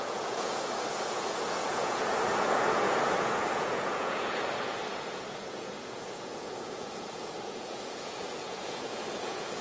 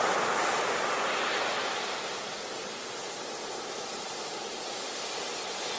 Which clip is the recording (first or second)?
second